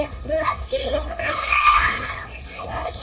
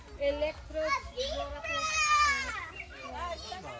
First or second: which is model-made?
first